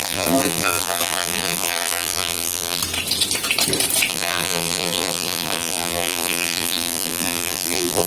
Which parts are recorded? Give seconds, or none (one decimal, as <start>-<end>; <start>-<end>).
2.8-4.1